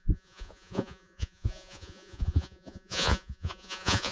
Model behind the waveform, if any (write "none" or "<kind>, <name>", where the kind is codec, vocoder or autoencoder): vocoder, Vocos